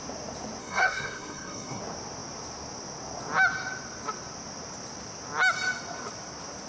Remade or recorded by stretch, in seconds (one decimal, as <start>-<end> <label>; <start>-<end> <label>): 0.0-0.6 recorded; 0.6-1.8 remade; 1.8-6.7 recorded